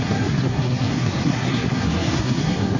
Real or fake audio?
fake